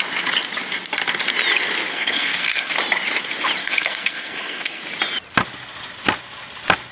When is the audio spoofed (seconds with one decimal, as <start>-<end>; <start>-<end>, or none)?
1.9-2.7; 3.6-4.8